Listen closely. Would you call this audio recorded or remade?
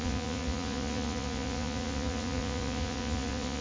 remade